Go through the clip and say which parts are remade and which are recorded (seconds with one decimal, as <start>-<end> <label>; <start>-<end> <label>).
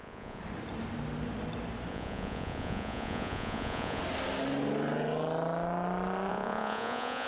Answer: 0.0-0.4 remade; 0.4-1.9 recorded; 1.9-4.0 remade; 4.0-6.3 recorded; 6.3-7.3 remade